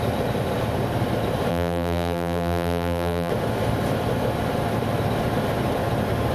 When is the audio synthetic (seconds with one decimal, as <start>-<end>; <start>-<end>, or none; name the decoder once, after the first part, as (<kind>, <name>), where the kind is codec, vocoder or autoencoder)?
1.5-3.3 (vocoder, BigVGAN v2)